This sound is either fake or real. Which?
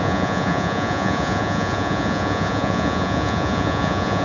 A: fake